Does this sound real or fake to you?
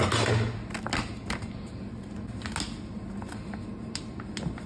real